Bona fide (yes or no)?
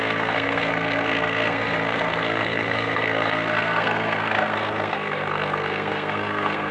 no